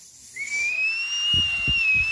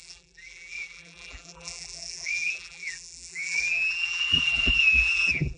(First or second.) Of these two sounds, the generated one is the second